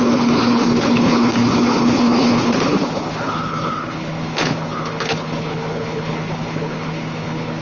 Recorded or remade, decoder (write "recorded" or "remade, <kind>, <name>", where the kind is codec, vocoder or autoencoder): remade, codec, HILCodec